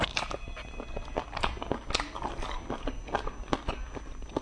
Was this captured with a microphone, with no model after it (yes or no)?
yes